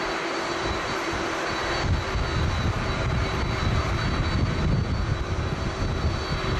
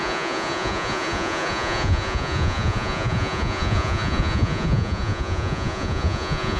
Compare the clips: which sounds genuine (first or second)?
first